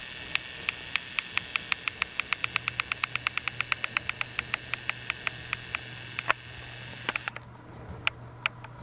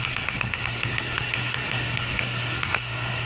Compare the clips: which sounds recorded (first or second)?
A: first